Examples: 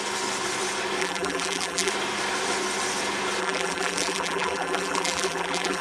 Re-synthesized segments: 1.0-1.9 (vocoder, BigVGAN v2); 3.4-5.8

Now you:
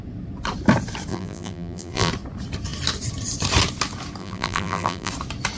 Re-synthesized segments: 1.1-2.1 (vocoder, BigVGAN v2); 4.2-5.1

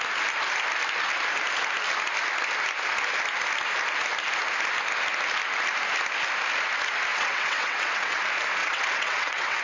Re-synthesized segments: 7.1-8.2 (vocoder, WaveNeXt); 8.6-9.6

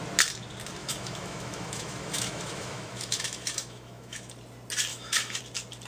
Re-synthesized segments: 0.8-4.3 (autoencoder, DAC-VAE); 4.9-5.4

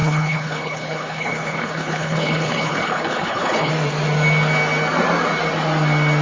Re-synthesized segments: 0.0-3.7 (codec, HILCodec)

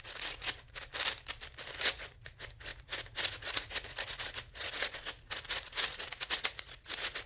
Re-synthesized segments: 0.0-0.8 (vocoder, Vocos); 1.8-7.3